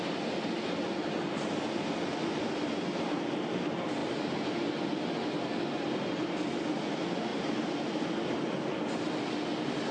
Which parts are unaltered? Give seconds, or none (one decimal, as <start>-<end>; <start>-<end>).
0.0-7.3; 8.0-9.9